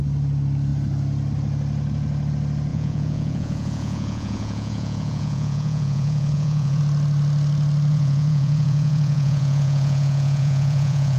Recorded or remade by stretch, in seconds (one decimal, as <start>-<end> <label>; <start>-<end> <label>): 0.0-2.7 recorded; 2.7-6.8 remade; 6.8-7.9 recorded; 7.9-11.2 remade